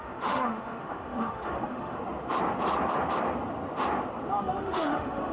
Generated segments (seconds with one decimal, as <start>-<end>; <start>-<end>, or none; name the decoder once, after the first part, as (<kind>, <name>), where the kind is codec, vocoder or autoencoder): 0.0-2.0 (autoencoder, DAC-VAE); 4.4-5.3